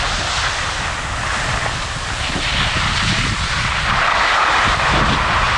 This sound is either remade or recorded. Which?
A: recorded